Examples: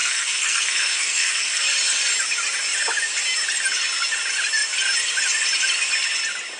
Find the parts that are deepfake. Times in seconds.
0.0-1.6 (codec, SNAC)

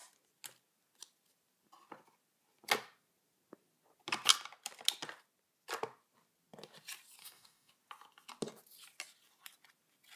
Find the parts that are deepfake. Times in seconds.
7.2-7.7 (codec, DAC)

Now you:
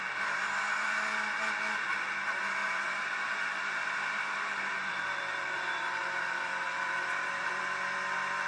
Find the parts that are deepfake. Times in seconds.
2.6-7.6 (vocoder, BigVGAN v2)

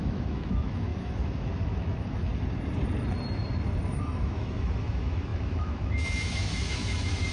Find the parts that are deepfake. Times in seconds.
0.0-2.3 (autoencoder, DAC-VAE); 4.0-7.3